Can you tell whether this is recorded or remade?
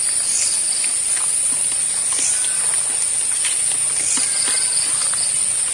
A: recorded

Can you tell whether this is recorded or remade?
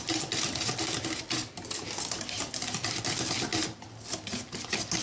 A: recorded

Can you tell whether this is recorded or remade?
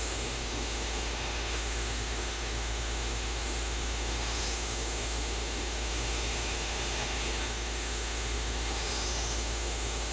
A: remade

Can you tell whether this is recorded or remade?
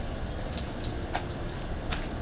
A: recorded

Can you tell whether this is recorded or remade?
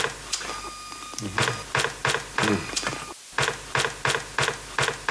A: recorded